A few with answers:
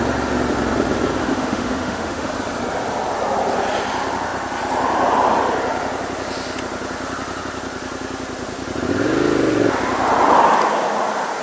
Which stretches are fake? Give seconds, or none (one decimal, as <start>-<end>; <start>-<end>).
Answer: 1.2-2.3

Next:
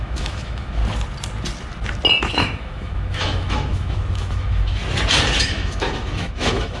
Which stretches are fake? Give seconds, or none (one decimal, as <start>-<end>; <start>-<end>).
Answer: 0.0-0.8; 2.2-4.8; 5.4-6.8

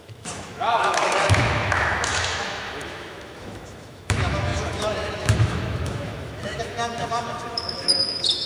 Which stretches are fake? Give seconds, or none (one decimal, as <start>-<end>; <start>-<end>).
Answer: 0.0-8.5

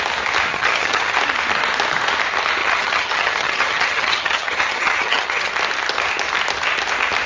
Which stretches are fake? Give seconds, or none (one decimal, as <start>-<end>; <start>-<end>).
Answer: 0.5-1.2; 2.6-5.5

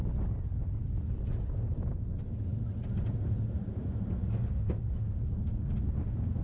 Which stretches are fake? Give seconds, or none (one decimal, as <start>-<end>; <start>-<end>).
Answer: none

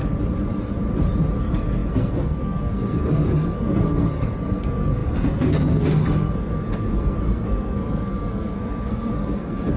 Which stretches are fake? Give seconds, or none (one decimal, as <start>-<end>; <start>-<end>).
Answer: 1.4-9.8